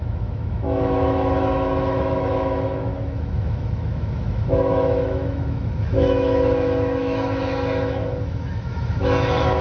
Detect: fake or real fake